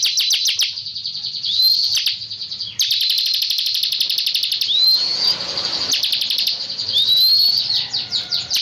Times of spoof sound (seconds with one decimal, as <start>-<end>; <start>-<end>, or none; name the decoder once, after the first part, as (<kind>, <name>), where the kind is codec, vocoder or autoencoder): 0.0-5.1 (vocoder, BigVGAN v2); 5.6-8.6